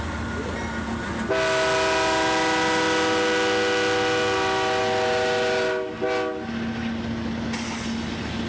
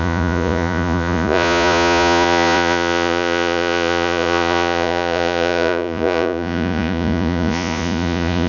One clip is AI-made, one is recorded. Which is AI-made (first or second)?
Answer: second